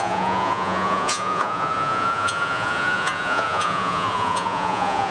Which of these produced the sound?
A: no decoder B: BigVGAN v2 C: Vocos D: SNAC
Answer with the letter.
C